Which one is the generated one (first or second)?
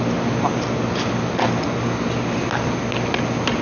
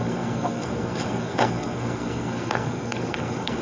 second